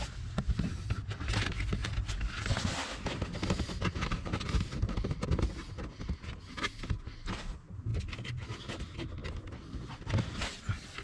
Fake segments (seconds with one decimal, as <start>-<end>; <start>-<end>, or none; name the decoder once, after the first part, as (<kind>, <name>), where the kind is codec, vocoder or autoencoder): none